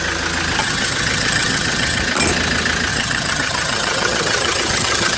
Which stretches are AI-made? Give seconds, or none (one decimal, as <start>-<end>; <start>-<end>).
0.6-2.0; 2.9-5.2